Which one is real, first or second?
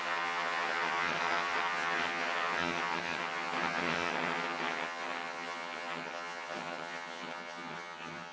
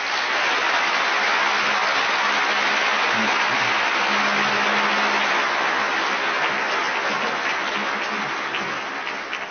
second